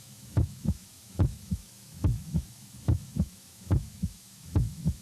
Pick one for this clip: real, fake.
fake